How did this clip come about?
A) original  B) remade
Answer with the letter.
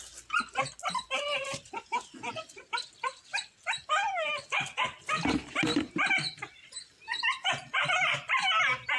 A